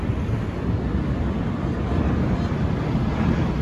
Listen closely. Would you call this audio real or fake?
real